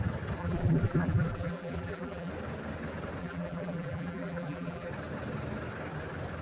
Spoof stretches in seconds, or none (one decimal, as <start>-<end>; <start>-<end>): 0.4-2.3; 3.2-4.9